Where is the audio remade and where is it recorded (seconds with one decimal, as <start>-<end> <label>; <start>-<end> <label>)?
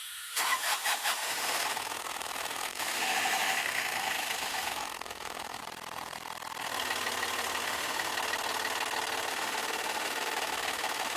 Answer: 0.0-5.6 remade; 5.6-7.6 recorded; 7.6-8.1 remade; 8.1-9.3 recorded; 9.3-11.2 remade